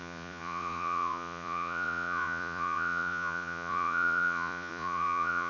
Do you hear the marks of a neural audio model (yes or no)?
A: yes